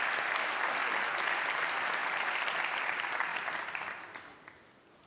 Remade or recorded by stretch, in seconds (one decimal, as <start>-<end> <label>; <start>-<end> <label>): 0.0-2.0 recorded; 2.0-2.8 remade; 2.8-3.3 recorded; 3.3-4.0 remade; 4.0-5.1 recorded